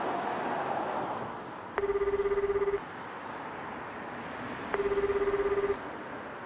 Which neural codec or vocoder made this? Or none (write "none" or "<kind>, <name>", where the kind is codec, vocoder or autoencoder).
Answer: none